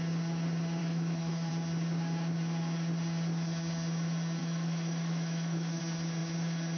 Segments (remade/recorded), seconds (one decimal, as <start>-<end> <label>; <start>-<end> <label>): 0.0-0.8 recorded; 0.8-1.5 remade; 1.5-4.4 recorded; 4.4-5.8 remade; 5.8-6.8 recorded